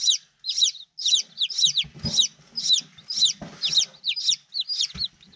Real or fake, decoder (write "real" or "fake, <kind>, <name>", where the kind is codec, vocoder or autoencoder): real